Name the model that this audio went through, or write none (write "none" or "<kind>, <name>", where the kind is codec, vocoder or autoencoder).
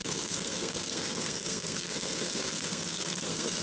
codec, SNAC